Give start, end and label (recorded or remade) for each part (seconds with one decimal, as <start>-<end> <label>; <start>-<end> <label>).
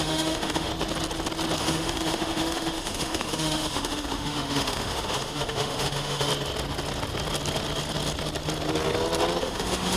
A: 0.0-0.7 remade; 0.7-1.6 recorded; 1.6-6.3 remade; 6.3-9.4 recorded; 9.4-10.0 remade